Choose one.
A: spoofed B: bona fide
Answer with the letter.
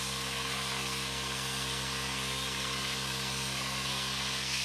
A